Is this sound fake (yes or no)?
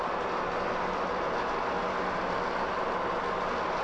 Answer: no